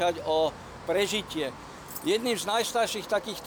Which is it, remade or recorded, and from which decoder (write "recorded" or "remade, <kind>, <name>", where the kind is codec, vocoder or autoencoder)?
recorded